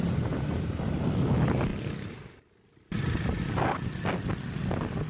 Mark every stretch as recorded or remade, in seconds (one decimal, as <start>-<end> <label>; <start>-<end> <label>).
0.0-5.1 recorded